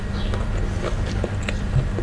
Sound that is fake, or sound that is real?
real